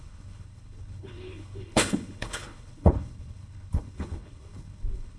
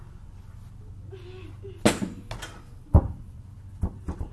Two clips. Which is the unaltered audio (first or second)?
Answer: second